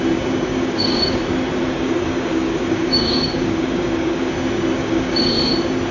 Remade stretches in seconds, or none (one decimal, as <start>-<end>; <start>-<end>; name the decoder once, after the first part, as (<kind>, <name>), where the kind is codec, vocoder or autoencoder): 0.5-1.2 (codec, DAC); 1.6-4.3; 4.8-5.3